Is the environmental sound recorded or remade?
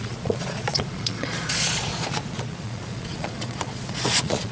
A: remade